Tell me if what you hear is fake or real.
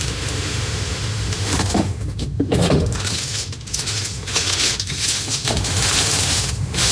fake